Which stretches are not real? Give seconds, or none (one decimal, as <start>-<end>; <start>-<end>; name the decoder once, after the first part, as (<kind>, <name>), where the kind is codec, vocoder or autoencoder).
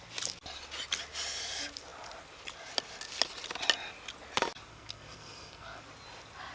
4.7-5.8 (codec, SNAC)